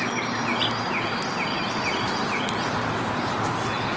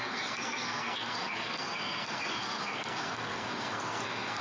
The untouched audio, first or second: first